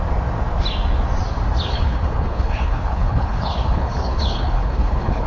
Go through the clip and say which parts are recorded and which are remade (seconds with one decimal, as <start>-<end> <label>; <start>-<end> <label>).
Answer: 0.0-1.7 recorded; 1.7-5.3 remade